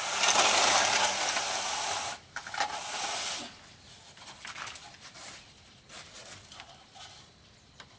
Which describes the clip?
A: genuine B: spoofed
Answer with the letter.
A